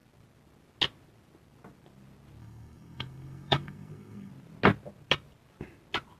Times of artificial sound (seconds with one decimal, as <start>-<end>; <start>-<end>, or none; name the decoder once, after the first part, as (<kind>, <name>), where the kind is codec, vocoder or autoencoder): 2.4-4.3 (codec, SNAC)